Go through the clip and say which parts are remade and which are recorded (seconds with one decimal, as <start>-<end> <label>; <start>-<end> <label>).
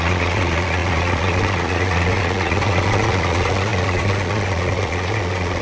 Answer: 0.0-5.6 remade